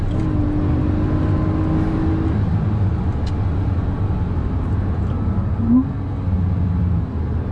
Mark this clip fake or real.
real